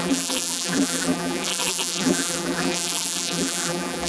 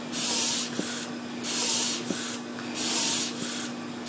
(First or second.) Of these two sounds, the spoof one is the first